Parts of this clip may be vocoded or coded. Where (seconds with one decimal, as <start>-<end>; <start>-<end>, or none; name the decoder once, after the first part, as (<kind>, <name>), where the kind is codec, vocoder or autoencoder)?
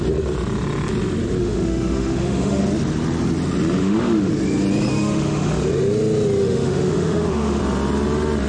1.4-2.6 (autoencoder, DAC-VAE); 3.8-4.3; 4.9-5.5; 6.4-7.6